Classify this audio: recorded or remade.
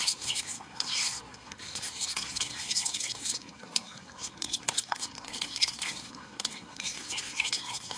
remade